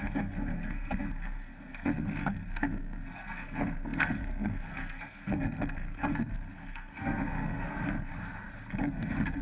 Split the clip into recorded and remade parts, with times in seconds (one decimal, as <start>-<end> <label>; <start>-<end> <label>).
0.0-8.1 remade; 8.1-8.9 recorded; 8.9-9.4 remade